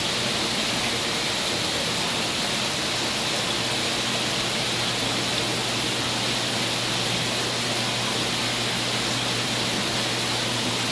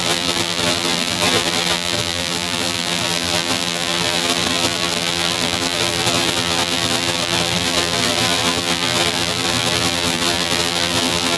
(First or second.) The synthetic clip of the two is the second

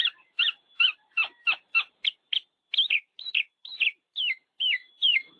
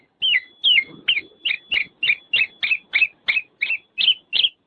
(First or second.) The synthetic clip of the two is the first